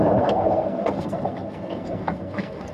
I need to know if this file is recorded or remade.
remade